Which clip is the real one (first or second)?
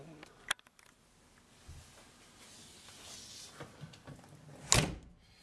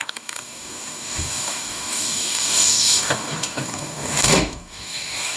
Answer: first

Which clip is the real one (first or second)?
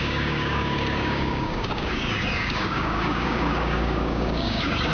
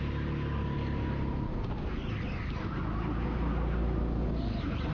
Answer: second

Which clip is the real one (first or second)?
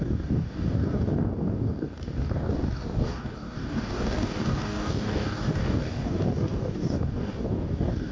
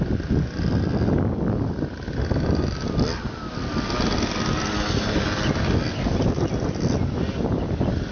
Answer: second